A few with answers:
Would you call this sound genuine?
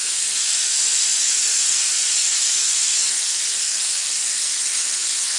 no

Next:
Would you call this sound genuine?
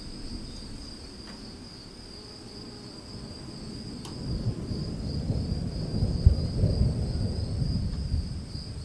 yes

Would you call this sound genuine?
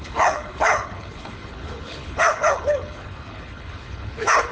no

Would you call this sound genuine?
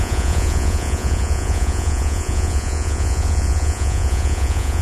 no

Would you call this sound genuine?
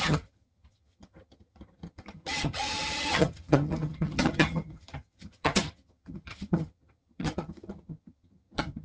no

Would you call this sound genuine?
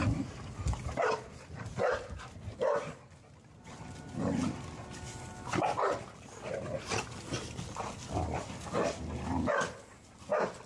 yes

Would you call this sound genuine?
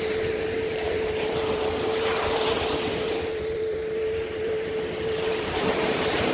no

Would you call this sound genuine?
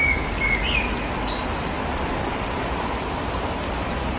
yes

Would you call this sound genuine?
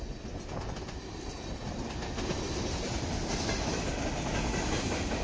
yes